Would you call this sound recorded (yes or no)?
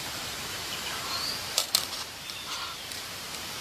no